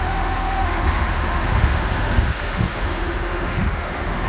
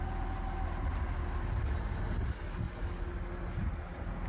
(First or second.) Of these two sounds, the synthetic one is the first